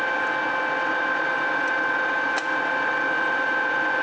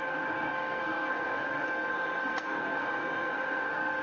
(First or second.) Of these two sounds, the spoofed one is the second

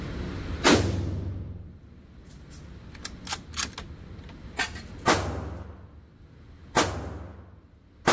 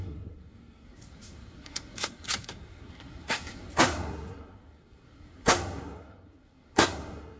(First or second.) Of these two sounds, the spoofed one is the second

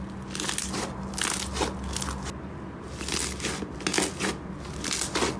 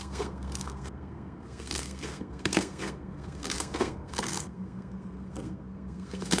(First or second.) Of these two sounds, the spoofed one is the second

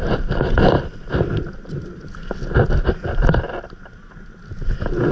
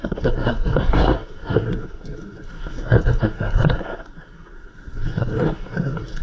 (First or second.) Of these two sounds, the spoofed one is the second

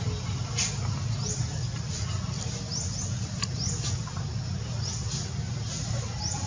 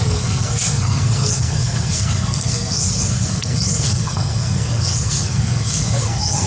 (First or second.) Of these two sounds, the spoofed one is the second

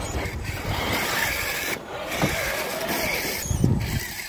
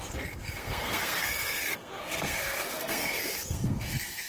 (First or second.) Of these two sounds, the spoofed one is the second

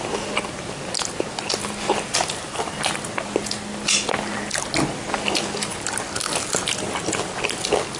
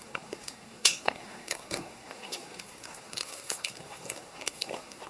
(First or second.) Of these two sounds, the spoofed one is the second